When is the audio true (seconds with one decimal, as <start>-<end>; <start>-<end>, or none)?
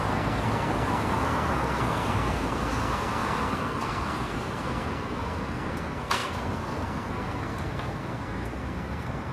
none